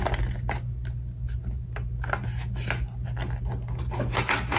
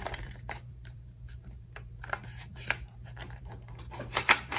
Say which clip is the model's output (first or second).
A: second